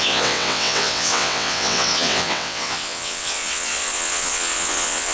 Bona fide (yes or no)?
no